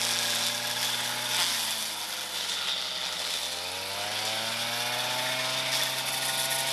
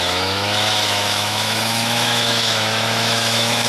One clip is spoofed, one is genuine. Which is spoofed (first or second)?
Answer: second